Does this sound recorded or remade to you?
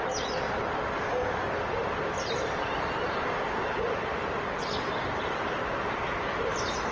recorded